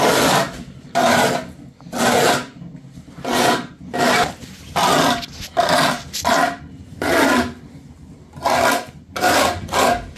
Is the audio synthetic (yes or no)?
no